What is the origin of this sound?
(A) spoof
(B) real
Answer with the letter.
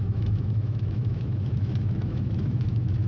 A